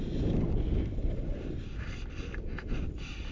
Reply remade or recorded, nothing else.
recorded